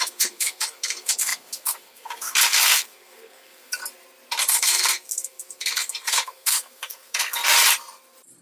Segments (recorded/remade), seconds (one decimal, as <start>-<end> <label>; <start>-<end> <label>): 0.0-3.8 remade; 3.8-4.5 recorded; 4.5-7.4 remade; 7.4-8.4 recorded